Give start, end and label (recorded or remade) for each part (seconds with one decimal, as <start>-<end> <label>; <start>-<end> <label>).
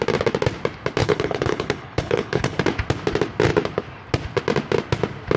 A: 0.0-1.0 recorded; 1.0-2.6 remade; 2.6-5.4 recorded